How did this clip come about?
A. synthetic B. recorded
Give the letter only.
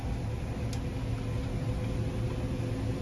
B